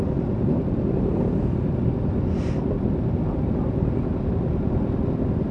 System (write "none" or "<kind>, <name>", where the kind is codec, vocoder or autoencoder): none